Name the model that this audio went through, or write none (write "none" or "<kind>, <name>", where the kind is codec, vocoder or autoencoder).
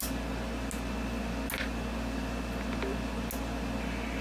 none